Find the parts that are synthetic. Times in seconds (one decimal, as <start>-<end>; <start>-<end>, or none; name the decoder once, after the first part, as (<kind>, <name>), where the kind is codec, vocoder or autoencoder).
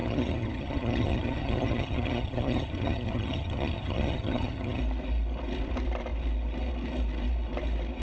0.0-4.8 (vocoder, HiFi-GAN)